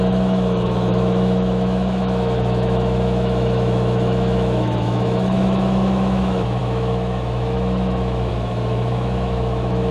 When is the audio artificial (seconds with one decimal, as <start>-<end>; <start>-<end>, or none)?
0.0-9.9